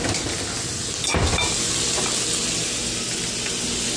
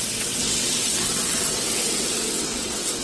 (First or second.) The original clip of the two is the first